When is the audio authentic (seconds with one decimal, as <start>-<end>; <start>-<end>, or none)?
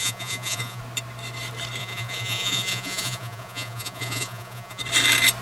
0.8-1.8; 4.8-5.4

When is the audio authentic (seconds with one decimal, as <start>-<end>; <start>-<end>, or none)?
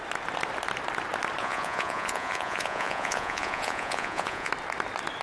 0.0-1.4; 4.5-5.2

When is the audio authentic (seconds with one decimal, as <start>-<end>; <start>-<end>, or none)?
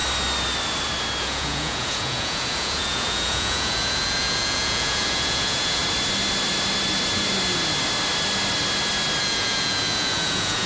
0.0-1.2; 5.8-9.2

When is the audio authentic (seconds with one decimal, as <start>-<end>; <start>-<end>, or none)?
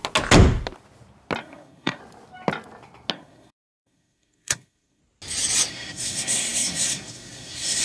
0.0-1.4; 2.0-3.1; 5.0-5.7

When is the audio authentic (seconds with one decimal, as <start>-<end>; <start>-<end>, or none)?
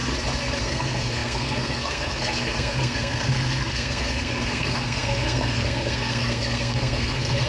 0.0-0.6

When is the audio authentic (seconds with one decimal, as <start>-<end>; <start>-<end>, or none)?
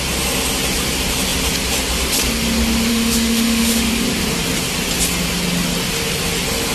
0.0-2.9; 3.9-6.7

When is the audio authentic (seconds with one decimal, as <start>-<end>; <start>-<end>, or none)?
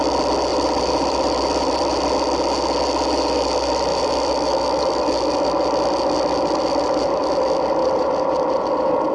0.0-0.5; 2.1-3.9; 5.0-7.8; 8.6-9.1